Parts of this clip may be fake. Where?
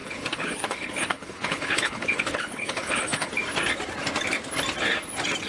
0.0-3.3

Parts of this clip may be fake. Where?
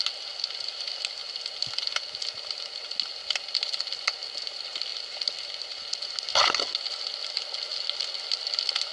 none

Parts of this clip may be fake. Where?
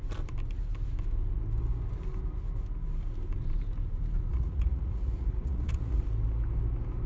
4.3-6.0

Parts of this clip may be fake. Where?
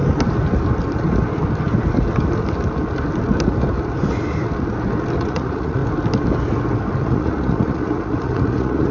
5.2-5.8; 7.0-8.9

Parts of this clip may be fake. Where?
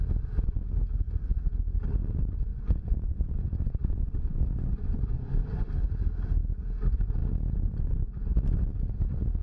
2.5-5.7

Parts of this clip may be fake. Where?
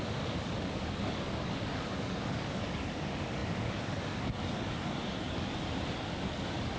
0.0-6.8